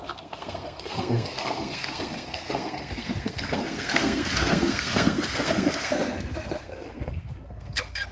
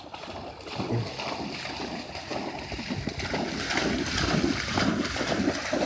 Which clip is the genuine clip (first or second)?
second